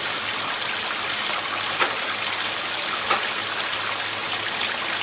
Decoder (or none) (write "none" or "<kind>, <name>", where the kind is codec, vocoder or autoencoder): none